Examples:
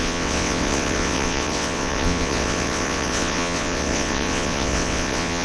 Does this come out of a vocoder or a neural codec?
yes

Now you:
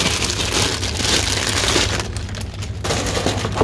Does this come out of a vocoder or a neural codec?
no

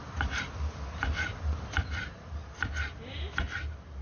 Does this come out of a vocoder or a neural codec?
no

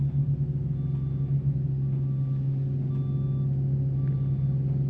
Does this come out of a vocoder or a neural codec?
no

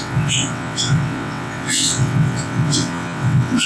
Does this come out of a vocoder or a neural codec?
yes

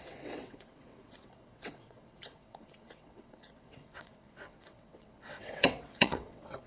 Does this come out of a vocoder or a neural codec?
yes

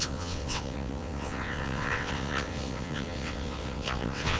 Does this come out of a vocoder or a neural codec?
yes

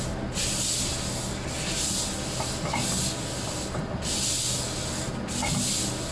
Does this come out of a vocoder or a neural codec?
no